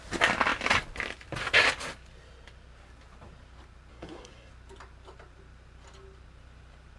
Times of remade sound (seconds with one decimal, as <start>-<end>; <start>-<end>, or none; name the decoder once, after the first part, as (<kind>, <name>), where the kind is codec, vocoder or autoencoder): 3.9-4.5 (codec, SNAC)